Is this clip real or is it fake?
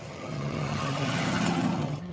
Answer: fake